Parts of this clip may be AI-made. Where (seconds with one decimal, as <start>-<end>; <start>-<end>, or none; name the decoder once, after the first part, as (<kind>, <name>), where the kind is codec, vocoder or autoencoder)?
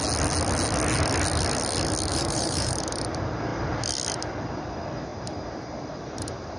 2.1-2.8 (vocoder, BigVGAN v2); 5.1-6.6